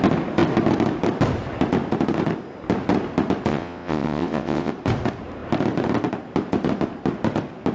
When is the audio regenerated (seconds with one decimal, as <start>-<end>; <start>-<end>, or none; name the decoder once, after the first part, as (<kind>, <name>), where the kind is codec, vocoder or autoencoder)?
3.5-4.7 (vocoder, WaveNeXt)